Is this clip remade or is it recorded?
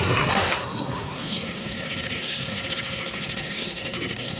remade